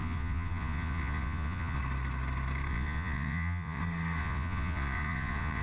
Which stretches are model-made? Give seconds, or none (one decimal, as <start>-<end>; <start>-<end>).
0.0-1.8; 2.7-3.8; 4.2-5.6